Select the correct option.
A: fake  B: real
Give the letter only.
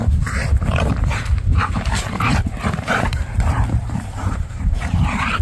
A